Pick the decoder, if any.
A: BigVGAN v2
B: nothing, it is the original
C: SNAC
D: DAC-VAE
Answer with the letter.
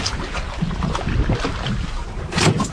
B